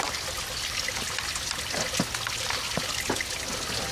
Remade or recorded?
recorded